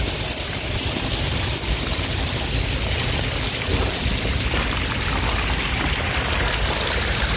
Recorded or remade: recorded